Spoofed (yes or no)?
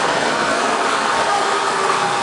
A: yes